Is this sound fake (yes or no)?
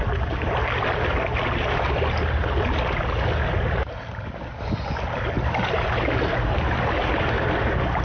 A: no